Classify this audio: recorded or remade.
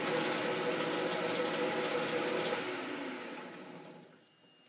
recorded